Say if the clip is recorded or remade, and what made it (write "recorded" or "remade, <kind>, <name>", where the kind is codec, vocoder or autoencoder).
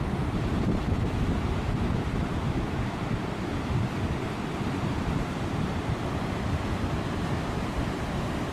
remade, vocoder, BigVGAN v2